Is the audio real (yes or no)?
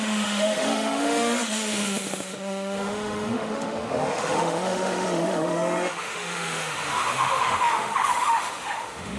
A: no